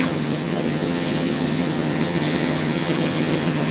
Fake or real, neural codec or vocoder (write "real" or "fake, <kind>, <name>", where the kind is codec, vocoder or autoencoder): fake, vocoder, HiFi-GAN